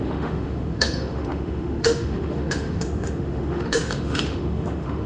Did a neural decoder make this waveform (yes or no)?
yes